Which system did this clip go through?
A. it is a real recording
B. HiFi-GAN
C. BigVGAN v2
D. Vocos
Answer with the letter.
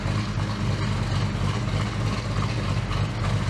A